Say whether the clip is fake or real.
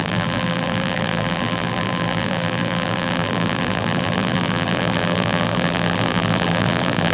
fake